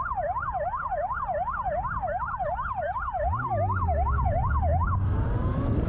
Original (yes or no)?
yes